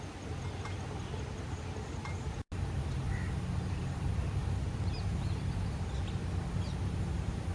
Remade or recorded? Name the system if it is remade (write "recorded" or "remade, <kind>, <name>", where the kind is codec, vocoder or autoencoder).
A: recorded